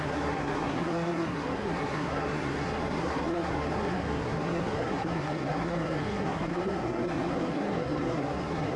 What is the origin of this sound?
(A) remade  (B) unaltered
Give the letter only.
A